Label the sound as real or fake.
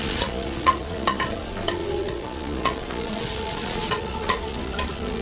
fake